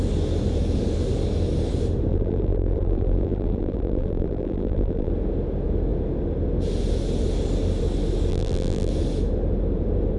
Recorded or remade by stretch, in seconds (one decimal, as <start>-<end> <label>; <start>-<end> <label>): 0.0-2.1 recorded; 2.1-5.1 remade; 5.1-8.3 recorded; 8.3-8.9 remade; 8.9-10.2 recorded